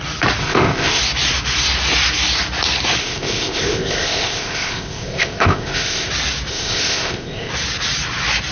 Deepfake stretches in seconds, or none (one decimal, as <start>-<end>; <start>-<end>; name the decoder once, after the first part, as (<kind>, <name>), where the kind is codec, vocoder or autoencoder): 0.4-1.0 (codec, ZipCodec); 3.0-6.1; 6.5-7.5

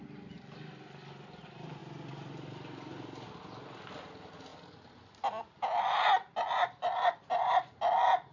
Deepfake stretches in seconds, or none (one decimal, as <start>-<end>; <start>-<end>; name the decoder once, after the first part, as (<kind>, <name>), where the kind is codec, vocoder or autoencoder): none

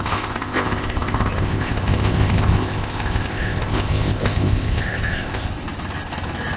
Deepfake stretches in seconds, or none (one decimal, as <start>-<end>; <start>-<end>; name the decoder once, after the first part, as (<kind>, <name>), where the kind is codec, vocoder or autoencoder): 0.0-5.5 (codec, ZipCodec)

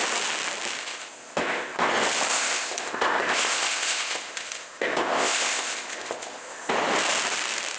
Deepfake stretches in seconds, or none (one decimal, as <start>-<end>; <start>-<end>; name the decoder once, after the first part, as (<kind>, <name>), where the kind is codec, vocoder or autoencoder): 0.8-1.9 (codec, ZipCodec); 2.3-6.7

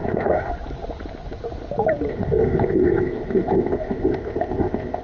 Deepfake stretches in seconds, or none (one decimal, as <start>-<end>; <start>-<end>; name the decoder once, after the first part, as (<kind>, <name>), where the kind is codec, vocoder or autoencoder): 0.0-0.5 (codec, ZipCodec); 2.1-5.0